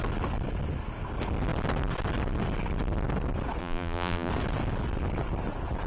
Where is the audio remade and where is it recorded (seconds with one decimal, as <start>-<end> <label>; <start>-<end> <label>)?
0.0-3.6 recorded; 3.6-4.3 remade; 4.3-5.9 recorded